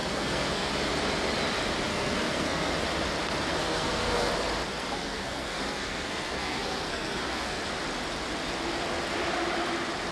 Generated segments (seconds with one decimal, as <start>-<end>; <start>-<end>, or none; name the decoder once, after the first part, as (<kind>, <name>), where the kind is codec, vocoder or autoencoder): 0.0-0.7 (codec, SNAC); 1.9-2.7; 3.5-4.3; 4.7-7.6